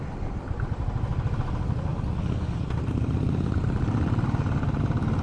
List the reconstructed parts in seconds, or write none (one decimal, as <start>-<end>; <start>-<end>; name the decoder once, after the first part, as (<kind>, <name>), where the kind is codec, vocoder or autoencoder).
0.0-1.9 (vocoder, BigVGAN v2); 2.6-5.2